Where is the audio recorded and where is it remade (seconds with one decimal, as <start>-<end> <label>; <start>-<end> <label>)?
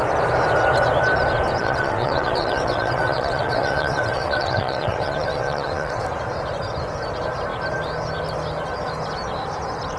0.0-1.6 recorded; 1.6-6.0 remade; 6.0-10.0 recorded